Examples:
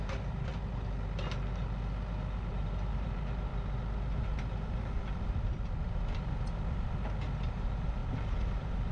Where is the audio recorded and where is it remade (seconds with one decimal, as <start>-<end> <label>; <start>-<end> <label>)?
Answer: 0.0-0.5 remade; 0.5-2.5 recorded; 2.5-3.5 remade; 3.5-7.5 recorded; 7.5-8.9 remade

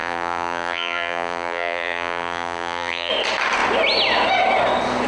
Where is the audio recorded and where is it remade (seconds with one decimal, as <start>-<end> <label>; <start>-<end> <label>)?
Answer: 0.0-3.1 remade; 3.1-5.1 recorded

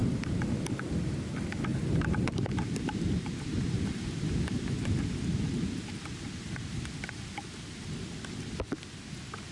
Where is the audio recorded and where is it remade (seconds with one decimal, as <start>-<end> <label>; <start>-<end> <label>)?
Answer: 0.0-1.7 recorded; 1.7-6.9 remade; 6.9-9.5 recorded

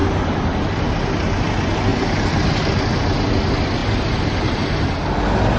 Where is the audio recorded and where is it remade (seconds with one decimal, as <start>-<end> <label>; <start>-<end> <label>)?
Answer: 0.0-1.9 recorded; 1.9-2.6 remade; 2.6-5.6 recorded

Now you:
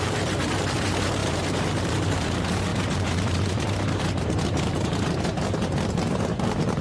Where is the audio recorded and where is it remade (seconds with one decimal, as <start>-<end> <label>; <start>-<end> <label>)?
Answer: 0.0-6.8 remade